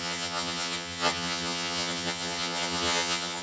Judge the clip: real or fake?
fake